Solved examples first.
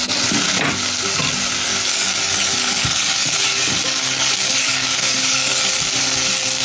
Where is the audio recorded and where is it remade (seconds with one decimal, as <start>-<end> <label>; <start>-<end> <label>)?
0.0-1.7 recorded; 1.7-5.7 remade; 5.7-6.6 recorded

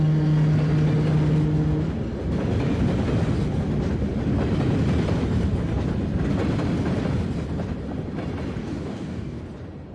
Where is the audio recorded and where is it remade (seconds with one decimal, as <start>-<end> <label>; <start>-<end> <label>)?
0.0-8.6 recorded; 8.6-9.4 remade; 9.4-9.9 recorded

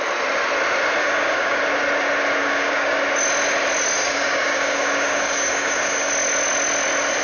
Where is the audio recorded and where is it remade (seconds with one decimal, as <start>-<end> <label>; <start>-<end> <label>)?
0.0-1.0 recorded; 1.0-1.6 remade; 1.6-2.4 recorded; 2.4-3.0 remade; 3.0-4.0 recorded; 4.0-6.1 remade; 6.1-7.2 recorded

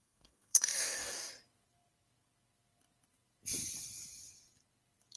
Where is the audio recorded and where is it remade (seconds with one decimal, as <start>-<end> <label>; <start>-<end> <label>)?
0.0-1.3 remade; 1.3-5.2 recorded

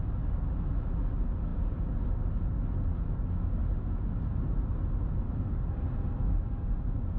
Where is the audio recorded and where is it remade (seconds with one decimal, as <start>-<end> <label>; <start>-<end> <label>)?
0.0-7.2 recorded

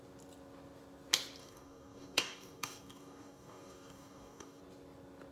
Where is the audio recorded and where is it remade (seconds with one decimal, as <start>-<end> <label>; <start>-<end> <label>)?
0.0-1.4 recorded; 1.4-4.6 remade; 4.6-5.3 recorded